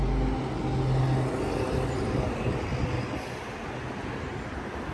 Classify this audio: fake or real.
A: real